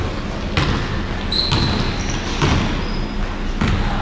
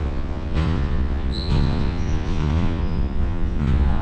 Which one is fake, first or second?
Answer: second